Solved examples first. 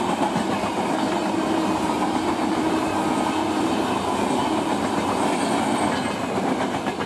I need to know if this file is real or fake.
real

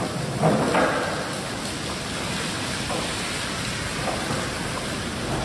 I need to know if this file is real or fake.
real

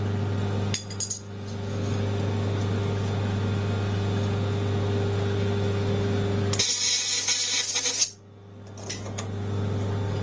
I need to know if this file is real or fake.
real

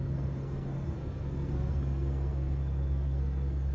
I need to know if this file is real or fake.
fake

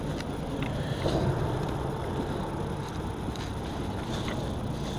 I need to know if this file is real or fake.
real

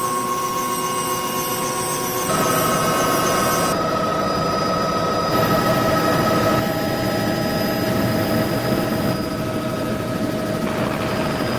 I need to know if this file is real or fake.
real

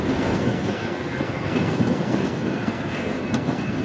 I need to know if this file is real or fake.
fake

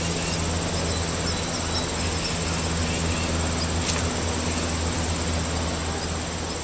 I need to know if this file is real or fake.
real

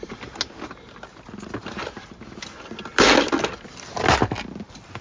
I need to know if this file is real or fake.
real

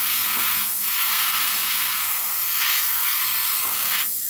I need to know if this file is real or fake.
fake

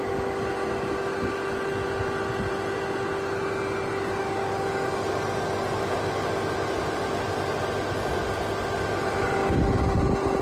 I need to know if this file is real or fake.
real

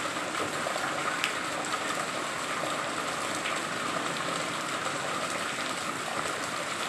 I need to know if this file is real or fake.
real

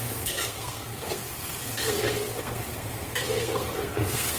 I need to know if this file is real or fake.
fake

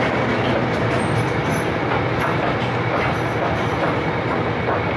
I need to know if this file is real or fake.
real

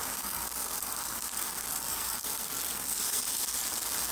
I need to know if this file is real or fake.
fake